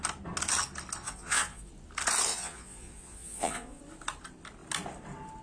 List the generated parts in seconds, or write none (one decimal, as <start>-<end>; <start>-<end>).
1.0-1.7; 2.3-3.8